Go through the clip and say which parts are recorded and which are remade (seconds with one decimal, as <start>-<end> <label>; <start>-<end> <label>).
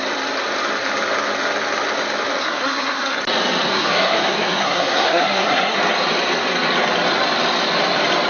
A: 0.0-2.4 recorded; 2.4-3.2 remade; 3.2-3.7 recorded; 3.7-5.8 remade; 5.8-8.3 recorded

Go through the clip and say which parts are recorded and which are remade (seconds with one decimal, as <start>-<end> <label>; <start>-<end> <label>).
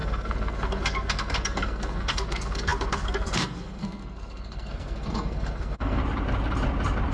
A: 0.0-6.0 remade; 6.0-7.1 recorded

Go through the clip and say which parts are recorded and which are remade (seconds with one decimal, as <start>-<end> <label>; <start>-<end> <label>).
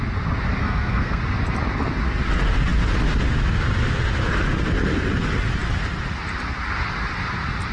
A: 0.0-0.6 recorded; 0.6-1.2 remade; 1.2-7.7 recorded